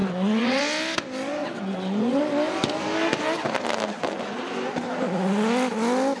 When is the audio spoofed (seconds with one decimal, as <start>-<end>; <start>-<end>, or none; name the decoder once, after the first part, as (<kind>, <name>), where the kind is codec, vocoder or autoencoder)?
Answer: 0.0-0.6 (vocoder, WaveNeXt); 1.4-2.2